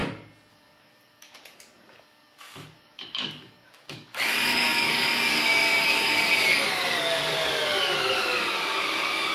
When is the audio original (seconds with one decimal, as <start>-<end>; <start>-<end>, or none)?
0.0-0.5